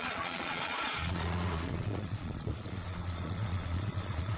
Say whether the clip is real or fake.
fake